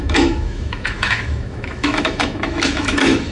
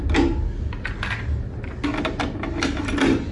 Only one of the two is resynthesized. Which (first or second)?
first